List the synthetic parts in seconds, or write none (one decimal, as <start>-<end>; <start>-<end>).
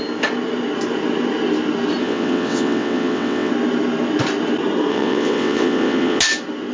2.0-3.5; 4.9-6.2